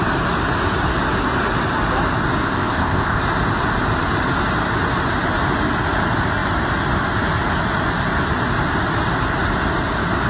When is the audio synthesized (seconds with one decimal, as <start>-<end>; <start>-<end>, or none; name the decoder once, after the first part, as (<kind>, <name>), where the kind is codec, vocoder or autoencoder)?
2.4-3.2 (codec, ZipCodec)